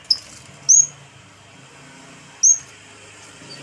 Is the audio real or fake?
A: real